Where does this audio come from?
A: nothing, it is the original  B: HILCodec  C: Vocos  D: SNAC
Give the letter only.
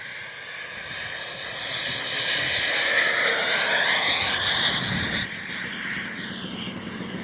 A